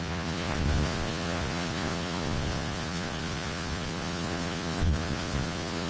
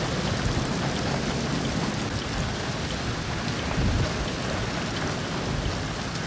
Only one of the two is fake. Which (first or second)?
first